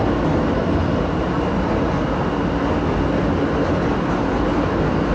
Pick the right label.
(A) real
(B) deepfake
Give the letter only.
A